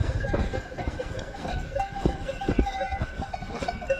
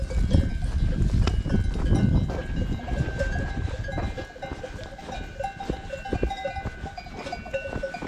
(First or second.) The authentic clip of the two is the second